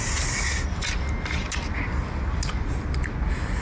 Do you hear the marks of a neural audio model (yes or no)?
no